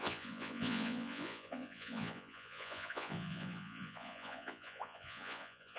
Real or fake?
fake